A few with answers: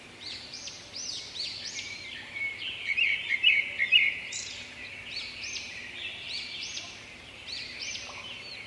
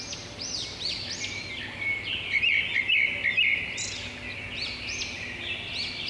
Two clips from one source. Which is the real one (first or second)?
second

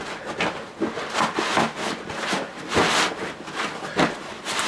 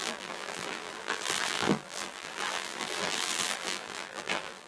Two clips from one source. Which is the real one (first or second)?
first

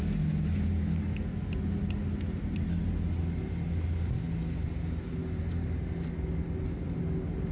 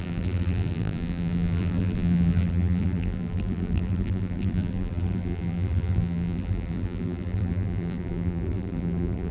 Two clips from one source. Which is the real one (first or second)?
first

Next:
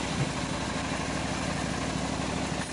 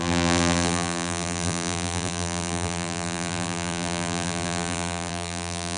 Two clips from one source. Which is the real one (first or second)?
first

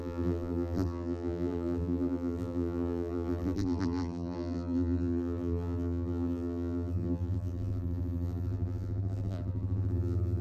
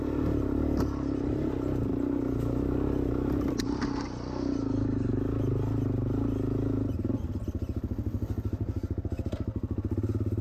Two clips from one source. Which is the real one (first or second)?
second